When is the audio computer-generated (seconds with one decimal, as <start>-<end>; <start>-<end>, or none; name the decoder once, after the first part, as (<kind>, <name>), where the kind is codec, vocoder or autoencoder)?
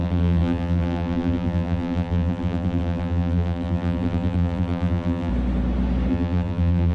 0.0-5.3 (vocoder, BigVGAN v2); 6.1-6.9